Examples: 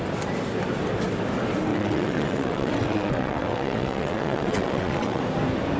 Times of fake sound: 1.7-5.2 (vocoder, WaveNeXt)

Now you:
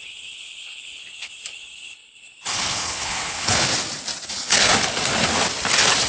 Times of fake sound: 0.0-3.7 (codec, HILCodec); 4.3-4.7

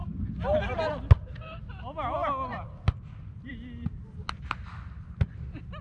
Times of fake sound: none

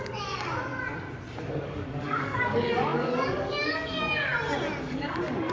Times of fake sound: 0.0-0.7 (codec, DAC); 1.4-4.3; 4.8-5.5

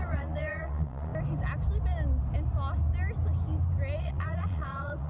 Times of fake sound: 0.0-1.1 (vocoder, Vocos); 4.0-5.1

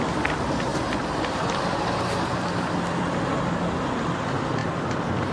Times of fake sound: none